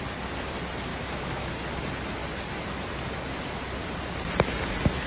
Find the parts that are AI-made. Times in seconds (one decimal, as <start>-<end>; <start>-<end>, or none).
0.9-1.5